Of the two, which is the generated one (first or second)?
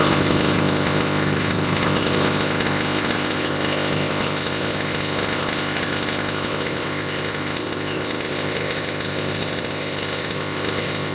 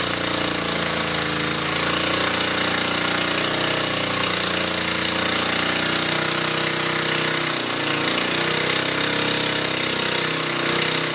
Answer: first